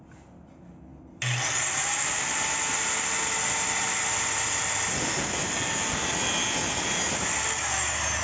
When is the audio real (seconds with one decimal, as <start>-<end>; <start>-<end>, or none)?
0.0-8.2